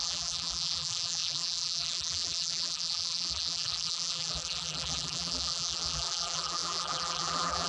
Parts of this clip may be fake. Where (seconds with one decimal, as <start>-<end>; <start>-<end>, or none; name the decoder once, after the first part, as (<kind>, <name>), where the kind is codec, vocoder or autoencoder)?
0.0-7.7 (vocoder, BigVGAN v2)